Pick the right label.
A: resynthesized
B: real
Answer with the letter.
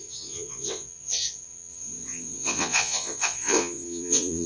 A